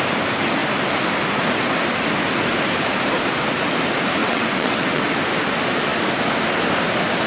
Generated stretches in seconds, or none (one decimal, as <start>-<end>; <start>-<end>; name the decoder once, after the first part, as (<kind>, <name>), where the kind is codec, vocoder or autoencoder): 4.2-5.0 (vocoder, WaveNeXt)